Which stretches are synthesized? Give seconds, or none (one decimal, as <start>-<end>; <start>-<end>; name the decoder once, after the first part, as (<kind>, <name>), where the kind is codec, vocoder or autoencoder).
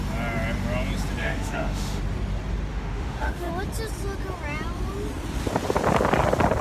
1.2-2.0 (autoencoder, DAC-VAE); 2.7-3.5